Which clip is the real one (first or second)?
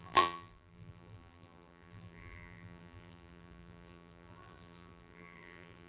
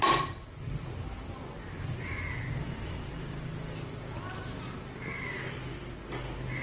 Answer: second